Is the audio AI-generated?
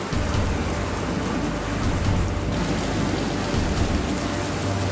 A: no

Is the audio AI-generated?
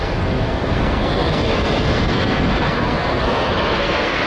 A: yes